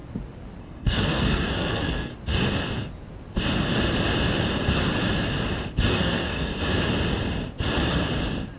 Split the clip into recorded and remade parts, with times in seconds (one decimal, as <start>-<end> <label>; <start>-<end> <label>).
0.0-0.6 recorded; 0.6-2.1 remade; 2.1-5.9 recorded; 5.9-6.5 remade; 6.5-8.6 recorded